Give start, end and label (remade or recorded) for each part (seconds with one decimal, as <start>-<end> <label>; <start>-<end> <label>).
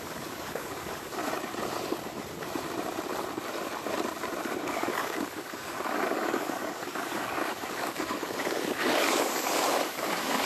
0.0-1.2 remade; 1.2-4.6 recorded; 4.6-10.5 remade